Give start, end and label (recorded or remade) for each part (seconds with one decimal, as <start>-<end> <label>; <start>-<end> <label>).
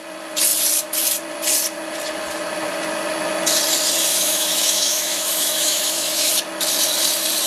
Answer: 0.0-4.1 recorded; 4.1-6.3 remade; 6.3-7.5 recorded